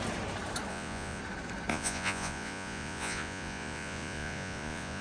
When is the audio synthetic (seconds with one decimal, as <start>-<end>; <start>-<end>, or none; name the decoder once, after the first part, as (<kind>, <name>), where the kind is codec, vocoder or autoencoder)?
0.7-1.2 (vocoder, Vocos); 1.7-5.0